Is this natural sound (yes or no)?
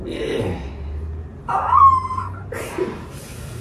yes